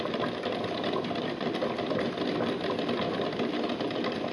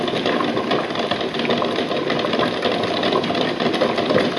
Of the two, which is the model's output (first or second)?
first